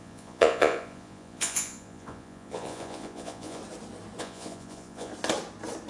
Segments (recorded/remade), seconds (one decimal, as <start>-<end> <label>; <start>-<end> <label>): 0.0-3.6 remade; 3.6-4.2 recorded; 4.2-5.1 remade; 5.1-5.9 recorded